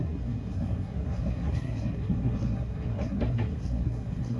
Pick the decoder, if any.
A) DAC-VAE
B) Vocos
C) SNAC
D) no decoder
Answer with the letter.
C